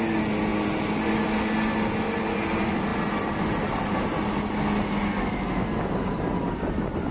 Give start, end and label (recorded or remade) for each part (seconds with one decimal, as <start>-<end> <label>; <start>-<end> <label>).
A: 0.0-7.1 recorded